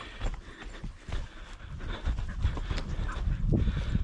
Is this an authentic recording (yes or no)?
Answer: yes